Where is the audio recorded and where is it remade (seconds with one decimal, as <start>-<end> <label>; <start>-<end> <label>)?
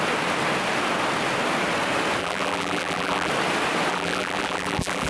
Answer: 0.0-2.2 recorded; 2.2-3.3 remade; 3.3-3.9 recorded; 3.9-5.1 remade